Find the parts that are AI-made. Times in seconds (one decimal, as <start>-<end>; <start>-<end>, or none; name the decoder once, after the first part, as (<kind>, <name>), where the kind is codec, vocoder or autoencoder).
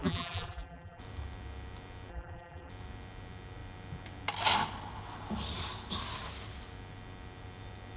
0.0-1.0 (vocoder, BigVGAN v2); 2.1-2.7